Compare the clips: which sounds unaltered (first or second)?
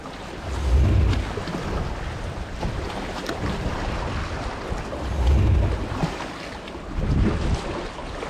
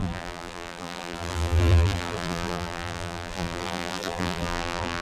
first